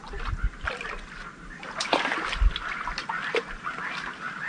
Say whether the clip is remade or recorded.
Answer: recorded